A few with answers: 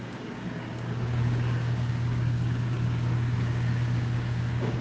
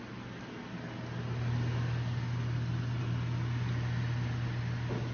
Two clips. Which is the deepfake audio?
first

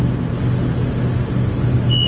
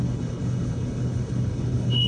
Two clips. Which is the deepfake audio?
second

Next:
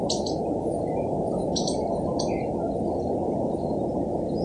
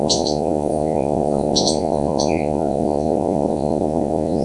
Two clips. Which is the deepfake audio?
second